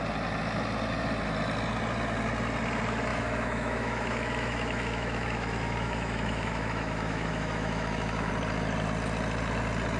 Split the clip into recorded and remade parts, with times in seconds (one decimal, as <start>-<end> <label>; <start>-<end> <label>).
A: 0.0-3.1 recorded; 3.1-8.3 remade; 8.3-10.0 recorded